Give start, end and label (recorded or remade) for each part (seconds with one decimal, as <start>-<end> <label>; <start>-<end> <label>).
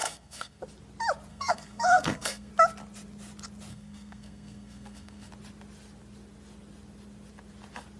0.0-0.6 remade; 0.6-1.3 recorded; 1.3-2.5 remade; 2.5-3.7 recorded; 3.7-5.3 remade; 5.3-8.0 recorded